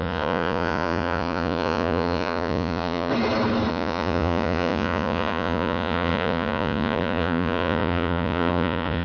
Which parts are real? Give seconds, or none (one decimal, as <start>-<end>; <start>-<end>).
3.1-3.7